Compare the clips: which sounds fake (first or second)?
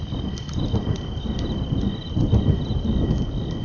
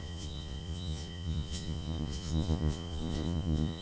second